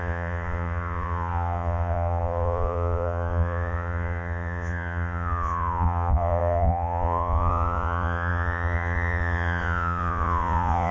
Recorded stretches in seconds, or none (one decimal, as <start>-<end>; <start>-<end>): none